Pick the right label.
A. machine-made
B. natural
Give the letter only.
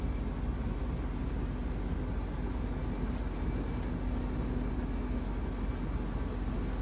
B